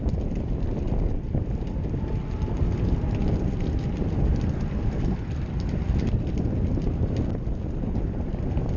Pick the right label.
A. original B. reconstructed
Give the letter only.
B